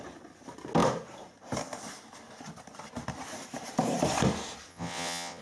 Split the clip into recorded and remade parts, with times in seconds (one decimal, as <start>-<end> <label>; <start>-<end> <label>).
0.0-4.7 recorded; 4.7-5.4 remade